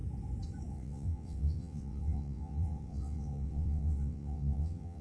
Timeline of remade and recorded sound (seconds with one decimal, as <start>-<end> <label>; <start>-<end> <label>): 0.0-0.7 recorded; 0.7-5.0 remade